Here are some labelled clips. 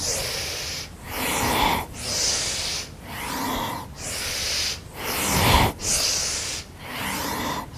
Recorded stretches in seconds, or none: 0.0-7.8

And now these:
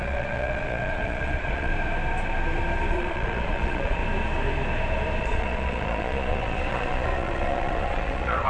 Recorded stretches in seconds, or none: 1.7-2.9; 4.0-5.2

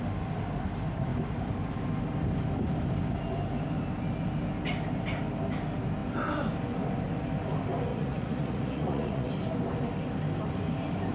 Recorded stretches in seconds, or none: 0.0-7.9; 9.3-11.1

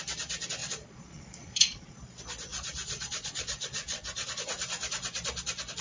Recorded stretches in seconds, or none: 0.0-0.6; 2.0-2.5; 4.4-5.8

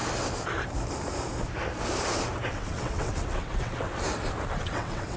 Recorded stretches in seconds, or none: 0.0-2.5; 3.9-4.5